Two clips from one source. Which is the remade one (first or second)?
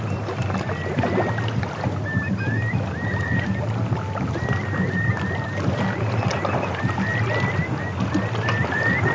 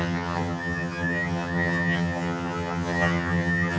second